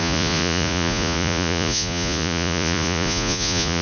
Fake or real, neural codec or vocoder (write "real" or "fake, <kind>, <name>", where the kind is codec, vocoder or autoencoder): fake, vocoder, Vocos